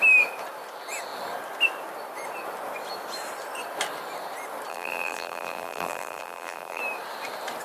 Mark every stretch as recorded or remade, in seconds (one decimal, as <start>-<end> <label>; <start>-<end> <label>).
0.0-4.7 recorded; 4.7-6.8 remade; 6.8-7.6 recorded